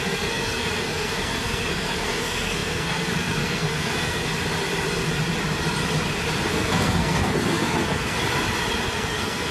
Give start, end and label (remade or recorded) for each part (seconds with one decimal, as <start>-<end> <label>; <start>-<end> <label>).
0.0-4.3 remade; 4.3-6.5 recorded; 6.5-8.2 remade; 8.2-8.8 recorded; 8.8-9.5 remade